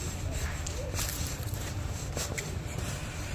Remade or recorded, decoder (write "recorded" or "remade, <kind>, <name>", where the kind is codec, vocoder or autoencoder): remade, vocoder, BigVGAN v2